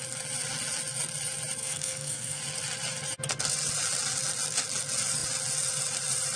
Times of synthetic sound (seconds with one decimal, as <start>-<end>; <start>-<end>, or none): 1.6-2.4